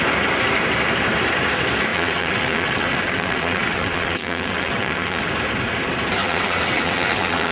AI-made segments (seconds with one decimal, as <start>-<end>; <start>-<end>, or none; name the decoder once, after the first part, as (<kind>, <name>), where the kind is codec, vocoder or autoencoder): 1.9-5.3 (vocoder, WaveNeXt); 6.2-7.5